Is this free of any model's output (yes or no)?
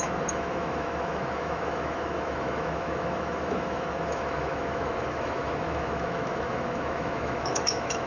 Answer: no